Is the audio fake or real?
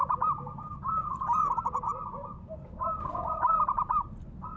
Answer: fake